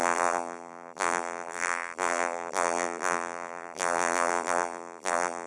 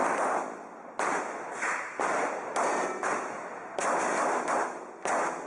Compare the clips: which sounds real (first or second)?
second